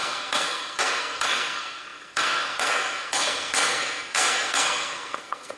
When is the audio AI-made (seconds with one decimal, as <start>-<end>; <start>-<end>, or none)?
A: 0.0-5.6